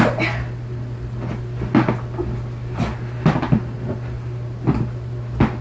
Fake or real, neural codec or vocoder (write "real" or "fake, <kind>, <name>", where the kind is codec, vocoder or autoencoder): real